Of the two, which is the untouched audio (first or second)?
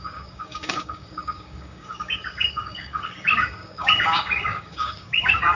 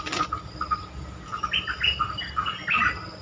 second